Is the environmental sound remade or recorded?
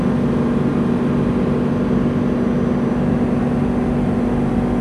recorded